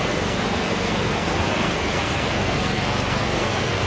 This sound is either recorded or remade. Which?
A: remade